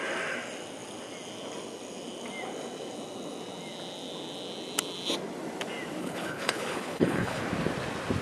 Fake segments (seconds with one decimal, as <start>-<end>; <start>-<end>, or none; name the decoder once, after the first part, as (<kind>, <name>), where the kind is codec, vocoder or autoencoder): 6.0-7.4 (codec, HILCodec)